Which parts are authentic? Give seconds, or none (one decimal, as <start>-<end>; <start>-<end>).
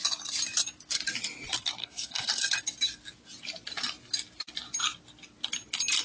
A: 0.0-1.8; 2.5-6.0